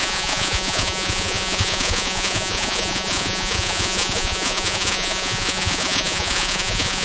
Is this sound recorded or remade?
remade